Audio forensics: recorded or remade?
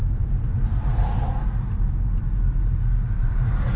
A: recorded